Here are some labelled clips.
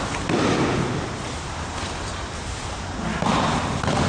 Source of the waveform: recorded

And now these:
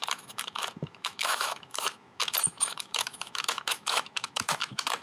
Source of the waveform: remade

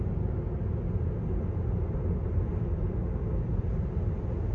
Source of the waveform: recorded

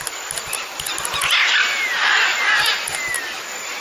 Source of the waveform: recorded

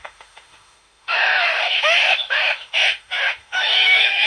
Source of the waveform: remade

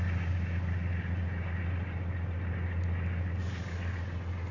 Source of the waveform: recorded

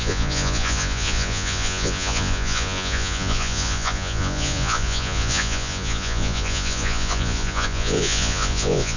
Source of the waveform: remade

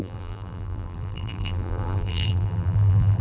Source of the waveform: remade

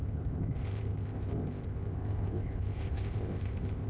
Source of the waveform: remade